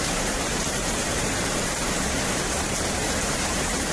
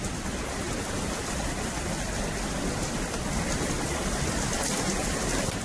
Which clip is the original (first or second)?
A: second